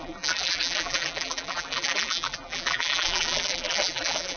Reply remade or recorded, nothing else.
remade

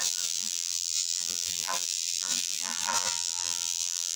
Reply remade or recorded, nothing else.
remade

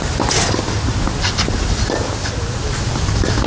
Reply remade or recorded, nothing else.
recorded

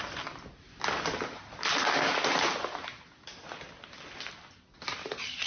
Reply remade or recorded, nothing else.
recorded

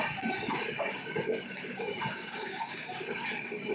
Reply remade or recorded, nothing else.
remade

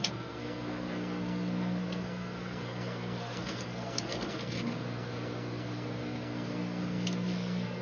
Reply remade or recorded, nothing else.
remade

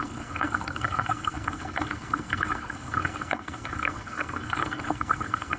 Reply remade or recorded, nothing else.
remade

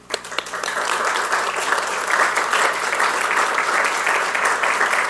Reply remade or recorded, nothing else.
recorded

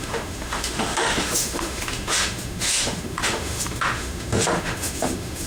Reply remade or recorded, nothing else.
remade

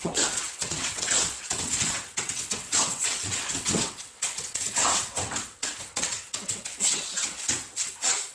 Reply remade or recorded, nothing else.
remade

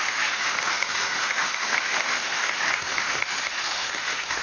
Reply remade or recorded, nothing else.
remade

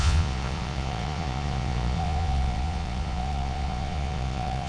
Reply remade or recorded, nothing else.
remade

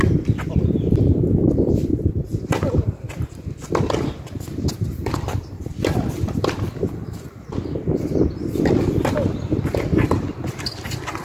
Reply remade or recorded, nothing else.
recorded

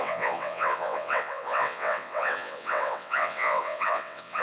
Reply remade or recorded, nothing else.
remade